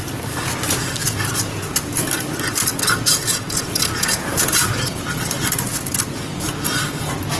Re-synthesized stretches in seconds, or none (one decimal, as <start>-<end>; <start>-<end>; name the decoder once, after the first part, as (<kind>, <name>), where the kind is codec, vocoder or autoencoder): 1.0-2.1 (vocoder, Vocos); 2.7-4.7